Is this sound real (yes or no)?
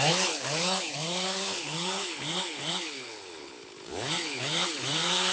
no